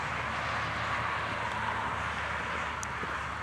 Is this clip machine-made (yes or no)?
no